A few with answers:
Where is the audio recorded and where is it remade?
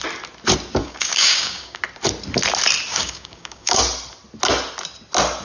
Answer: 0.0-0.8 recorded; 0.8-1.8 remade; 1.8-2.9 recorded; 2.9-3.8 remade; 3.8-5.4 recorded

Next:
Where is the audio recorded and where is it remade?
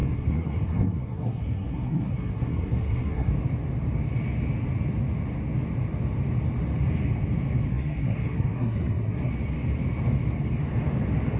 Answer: 0.0-3.3 remade; 3.3-7.7 recorded; 7.7-9.3 remade; 9.3-11.4 recorded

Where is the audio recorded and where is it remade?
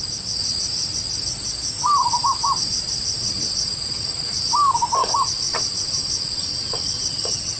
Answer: 0.0-3.2 recorded; 3.2-4.4 remade; 4.4-5.0 recorded; 5.0-7.6 remade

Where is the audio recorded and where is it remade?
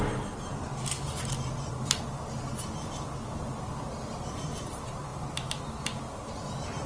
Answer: 0.0-6.9 recorded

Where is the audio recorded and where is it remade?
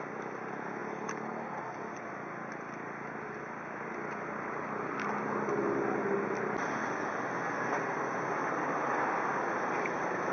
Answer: 0.0-10.3 recorded